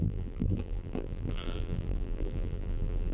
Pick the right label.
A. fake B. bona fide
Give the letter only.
A